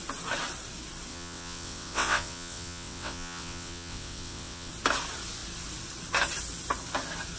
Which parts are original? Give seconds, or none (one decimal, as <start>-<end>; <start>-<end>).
0.0-1.1; 4.7-7.4